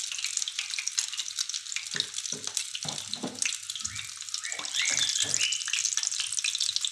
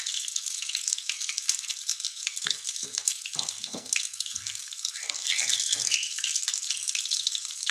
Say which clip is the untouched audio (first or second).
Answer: first